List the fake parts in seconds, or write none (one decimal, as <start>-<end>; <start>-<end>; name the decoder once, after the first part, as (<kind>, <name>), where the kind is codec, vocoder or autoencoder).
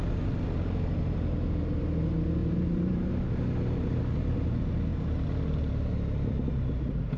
2.4-3.1 (vocoder, BigVGAN v2)